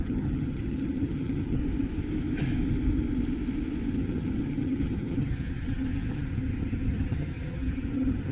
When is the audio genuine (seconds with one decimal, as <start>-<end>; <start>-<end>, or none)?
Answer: 1.6-3.9